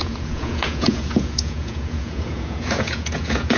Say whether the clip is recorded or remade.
remade